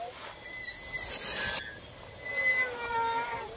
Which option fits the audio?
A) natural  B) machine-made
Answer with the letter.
A